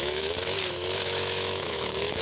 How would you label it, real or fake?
fake